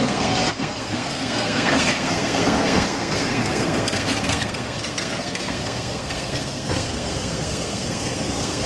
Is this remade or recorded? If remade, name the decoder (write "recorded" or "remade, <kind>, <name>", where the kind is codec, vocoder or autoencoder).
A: remade, codec, SNAC